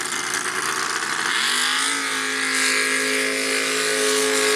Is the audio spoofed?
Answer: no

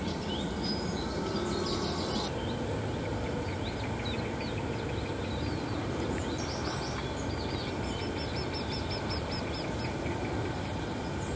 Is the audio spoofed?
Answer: no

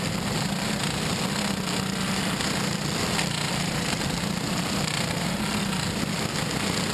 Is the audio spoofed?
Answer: no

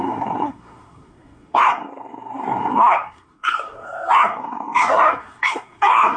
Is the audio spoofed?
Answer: yes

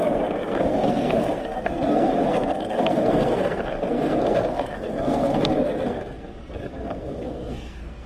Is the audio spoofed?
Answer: yes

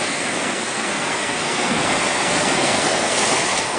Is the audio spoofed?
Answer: yes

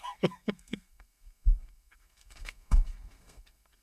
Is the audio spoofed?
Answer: yes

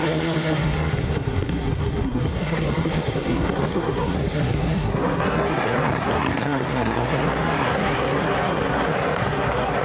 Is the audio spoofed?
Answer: yes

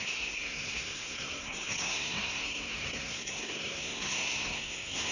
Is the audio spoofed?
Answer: yes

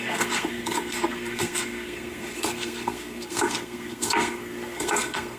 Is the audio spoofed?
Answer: yes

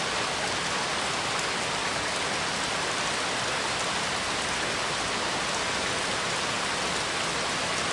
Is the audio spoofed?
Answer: no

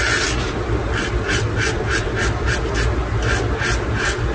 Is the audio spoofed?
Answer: no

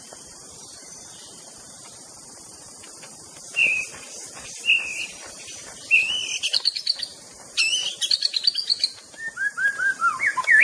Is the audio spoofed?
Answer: no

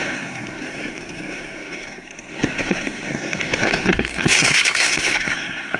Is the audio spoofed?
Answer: yes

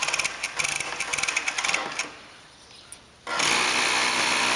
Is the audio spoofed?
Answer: no